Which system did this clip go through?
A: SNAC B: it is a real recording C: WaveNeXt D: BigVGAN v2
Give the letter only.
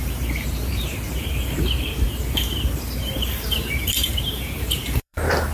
D